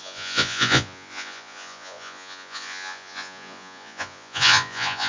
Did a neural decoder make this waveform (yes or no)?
yes